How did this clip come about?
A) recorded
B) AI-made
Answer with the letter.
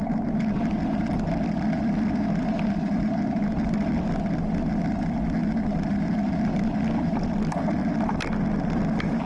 A